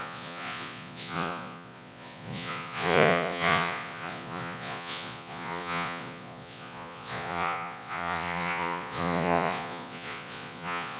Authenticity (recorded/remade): remade